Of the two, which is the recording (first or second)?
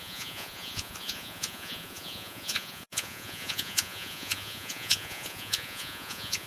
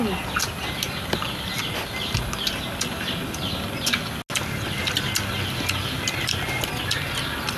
second